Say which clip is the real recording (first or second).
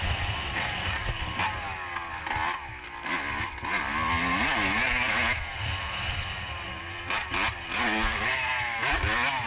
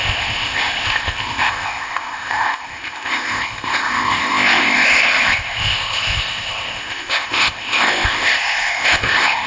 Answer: first